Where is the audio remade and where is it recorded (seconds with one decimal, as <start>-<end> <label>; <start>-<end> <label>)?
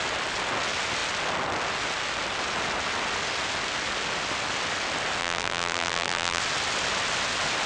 0.0-5.2 recorded; 5.2-6.4 remade; 6.4-7.7 recorded